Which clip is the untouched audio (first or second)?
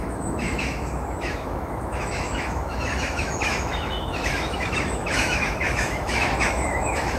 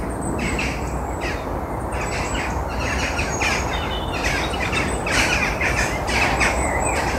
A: second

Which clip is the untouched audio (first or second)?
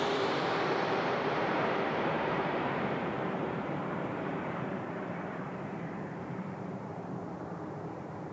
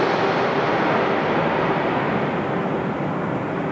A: second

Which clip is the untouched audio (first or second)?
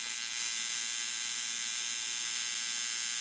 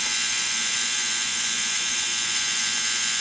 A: first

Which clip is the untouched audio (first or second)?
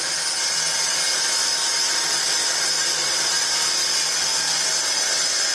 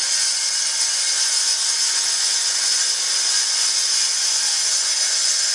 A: first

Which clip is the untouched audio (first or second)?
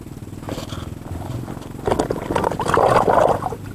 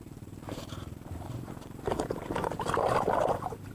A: first